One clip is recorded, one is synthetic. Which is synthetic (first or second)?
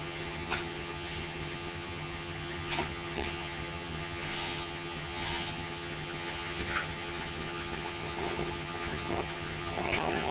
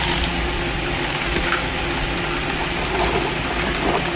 first